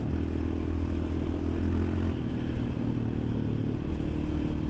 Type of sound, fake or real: real